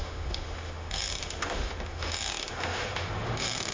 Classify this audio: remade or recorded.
remade